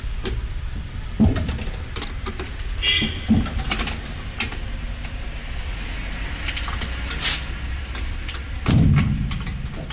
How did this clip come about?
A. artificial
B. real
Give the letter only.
A